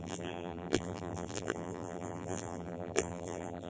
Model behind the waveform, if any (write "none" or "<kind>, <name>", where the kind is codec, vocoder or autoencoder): vocoder, BigVGAN v2